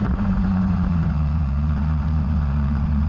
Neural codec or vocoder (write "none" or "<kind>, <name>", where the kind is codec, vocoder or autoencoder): vocoder, Vocos